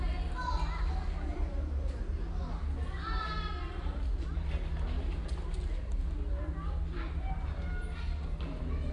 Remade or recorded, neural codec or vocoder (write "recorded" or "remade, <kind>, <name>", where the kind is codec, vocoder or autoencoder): recorded